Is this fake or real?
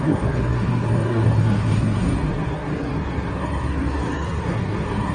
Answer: fake